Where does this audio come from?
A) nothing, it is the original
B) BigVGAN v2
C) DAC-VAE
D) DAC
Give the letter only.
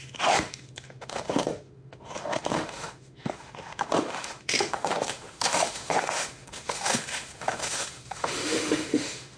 C